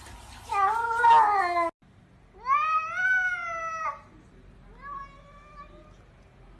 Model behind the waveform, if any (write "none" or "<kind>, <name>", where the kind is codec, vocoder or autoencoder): none